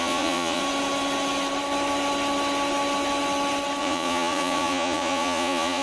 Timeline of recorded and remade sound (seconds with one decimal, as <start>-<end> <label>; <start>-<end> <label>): 0.0-0.6 remade; 0.6-3.8 recorded; 3.8-5.8 remade